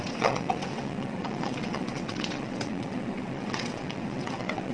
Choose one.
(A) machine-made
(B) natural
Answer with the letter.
A